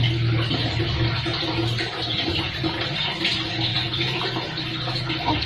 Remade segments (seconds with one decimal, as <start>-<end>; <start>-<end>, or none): 3.7-4.2